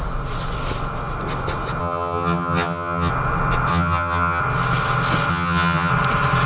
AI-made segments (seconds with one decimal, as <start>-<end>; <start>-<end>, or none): 1.8-3.1; 3.7-4.4; 5.3-5.9